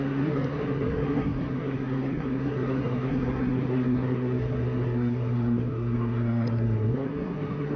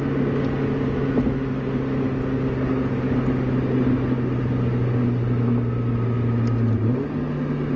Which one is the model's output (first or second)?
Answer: first